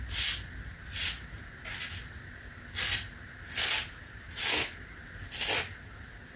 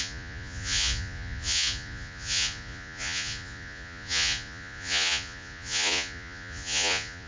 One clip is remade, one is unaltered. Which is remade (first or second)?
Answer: second